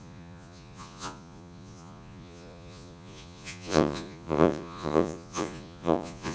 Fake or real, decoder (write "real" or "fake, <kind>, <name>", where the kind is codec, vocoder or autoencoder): fake, vocoder, Vocos